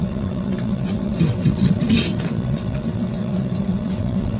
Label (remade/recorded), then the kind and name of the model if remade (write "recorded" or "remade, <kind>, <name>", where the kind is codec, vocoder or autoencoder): remade, vocoder, WaveNeXt